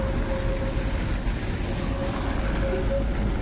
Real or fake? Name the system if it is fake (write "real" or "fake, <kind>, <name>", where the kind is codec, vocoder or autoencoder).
real